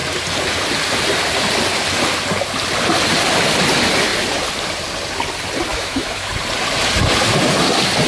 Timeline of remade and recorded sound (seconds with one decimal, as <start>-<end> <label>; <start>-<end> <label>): 0.0-5.7 recorded; 5.7-6.3 remade; 6.3-8.1 recorded